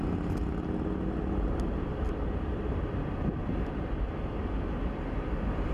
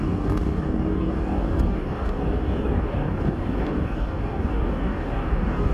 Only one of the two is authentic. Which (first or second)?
first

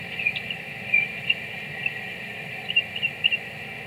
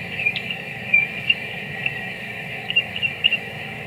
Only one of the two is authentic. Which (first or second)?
first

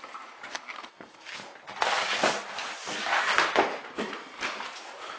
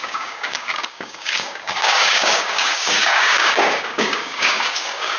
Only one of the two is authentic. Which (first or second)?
first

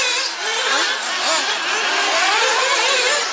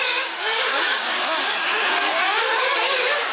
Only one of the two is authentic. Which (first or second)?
first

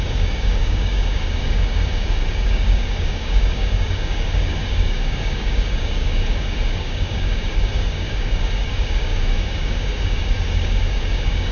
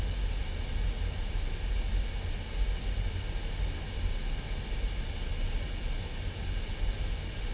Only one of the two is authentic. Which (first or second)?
second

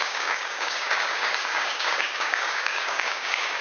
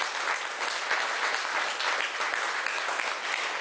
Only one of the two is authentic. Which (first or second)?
second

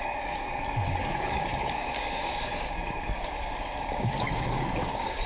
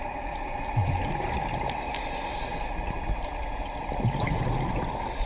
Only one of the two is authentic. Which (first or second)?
second